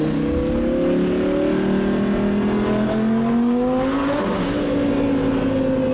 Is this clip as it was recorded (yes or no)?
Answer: yes